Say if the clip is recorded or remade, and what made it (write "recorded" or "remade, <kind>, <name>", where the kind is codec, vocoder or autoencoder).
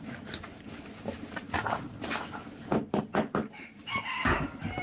remade, vocoder, BigVGAN v2